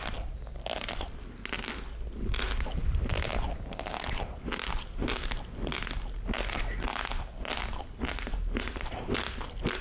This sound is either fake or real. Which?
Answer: real